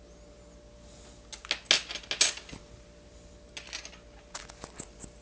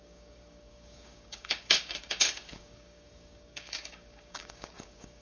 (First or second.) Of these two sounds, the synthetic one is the second